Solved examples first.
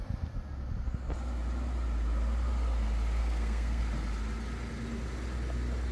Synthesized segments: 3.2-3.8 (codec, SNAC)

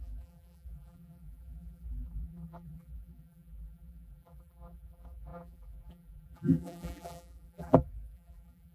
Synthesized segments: 0.0-8.7 (vocoder, BigVGAN v2)

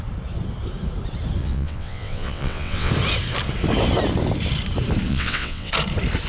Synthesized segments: 1.4-2.9 (vocoder, WaveNeXt); 5.1-5.7

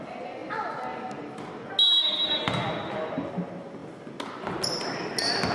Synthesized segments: none

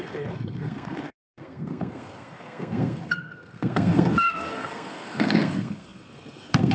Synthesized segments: 0.0-6.7 (codec, SNAC)

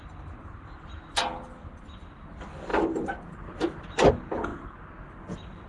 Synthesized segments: 2.7-4.1 (vocoder, BigVGAN v2)